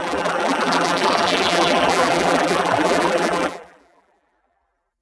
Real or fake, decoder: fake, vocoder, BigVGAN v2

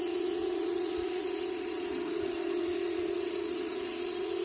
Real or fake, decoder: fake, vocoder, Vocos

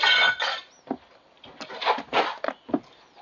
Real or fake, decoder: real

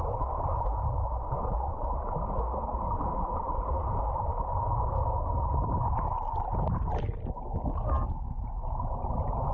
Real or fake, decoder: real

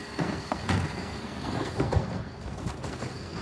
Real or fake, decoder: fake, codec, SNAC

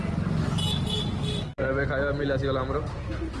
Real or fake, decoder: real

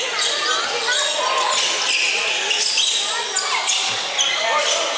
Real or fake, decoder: real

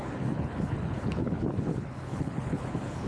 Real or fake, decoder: fake, codec, HILCodec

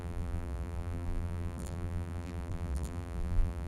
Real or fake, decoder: fake, vocoder, BigVGAN v2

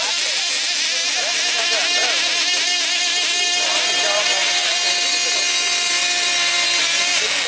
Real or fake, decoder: real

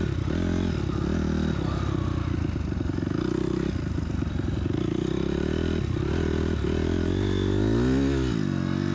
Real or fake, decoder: real